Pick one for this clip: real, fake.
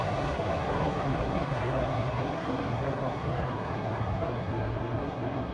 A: fake